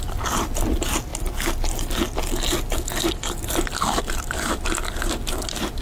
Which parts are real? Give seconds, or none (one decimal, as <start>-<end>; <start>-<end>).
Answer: 0.0-5.8

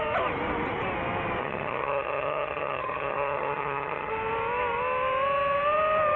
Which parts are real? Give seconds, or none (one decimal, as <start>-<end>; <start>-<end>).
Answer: 0.0-1.4; 4.1-6.2

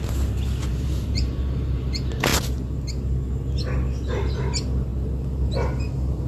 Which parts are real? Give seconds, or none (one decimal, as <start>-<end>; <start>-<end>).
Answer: 0.0-0.7; 1.4-6.3